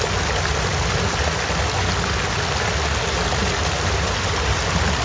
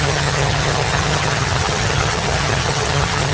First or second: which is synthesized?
second